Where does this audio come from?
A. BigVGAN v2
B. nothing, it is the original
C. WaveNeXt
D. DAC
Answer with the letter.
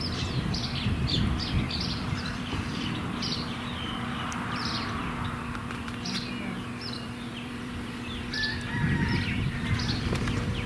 A